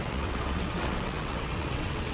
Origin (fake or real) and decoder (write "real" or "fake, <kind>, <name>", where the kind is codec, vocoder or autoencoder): fake, vocoder, WaveNeXt